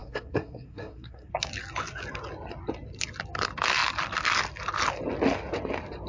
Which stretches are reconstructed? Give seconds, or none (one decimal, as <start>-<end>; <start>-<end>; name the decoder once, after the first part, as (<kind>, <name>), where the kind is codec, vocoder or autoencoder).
0.0-1.3 (codec, SNAC)

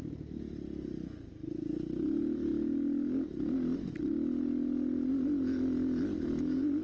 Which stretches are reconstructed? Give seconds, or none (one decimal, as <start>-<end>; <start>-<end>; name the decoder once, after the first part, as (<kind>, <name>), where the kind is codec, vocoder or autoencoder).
none

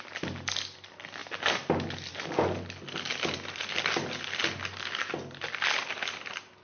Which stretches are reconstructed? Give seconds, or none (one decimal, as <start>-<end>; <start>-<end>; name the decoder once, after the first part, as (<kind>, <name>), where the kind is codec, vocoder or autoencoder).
none

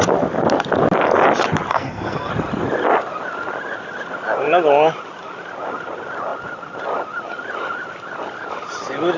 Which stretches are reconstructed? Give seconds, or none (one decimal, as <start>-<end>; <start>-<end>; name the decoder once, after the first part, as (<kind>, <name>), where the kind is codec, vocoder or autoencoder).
1.7-2.3 (codec, SNAC)

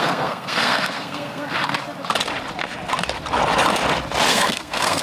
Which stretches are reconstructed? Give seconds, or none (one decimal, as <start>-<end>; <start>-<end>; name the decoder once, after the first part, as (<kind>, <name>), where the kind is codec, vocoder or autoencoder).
0.0-1.5 (codec, SNAC); 4.3-5.0

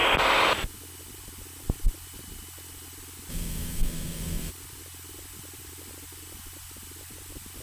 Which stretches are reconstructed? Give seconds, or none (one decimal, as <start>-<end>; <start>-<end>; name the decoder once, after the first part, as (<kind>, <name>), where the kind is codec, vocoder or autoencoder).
3.3-4.5 (codec, SNAC)

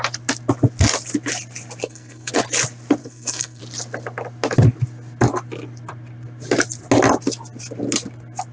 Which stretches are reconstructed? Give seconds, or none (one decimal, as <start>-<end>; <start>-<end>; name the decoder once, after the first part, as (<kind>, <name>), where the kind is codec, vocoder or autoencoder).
1.8-2.3 (codec, SNAC); 3.0-3.6